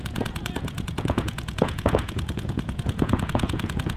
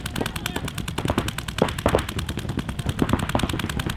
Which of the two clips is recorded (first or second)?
second